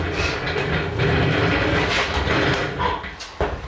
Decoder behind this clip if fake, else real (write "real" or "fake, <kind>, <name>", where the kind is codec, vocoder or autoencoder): real